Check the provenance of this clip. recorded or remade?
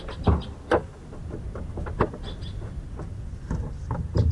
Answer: recorded